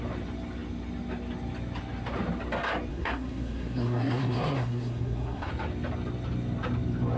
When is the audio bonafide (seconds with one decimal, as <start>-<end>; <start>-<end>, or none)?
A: 0.0-2.9; 5.5-7.2